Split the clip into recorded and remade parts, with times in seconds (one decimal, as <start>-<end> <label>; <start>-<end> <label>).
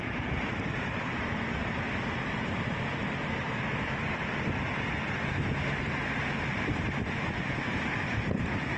0.0-8.8 remade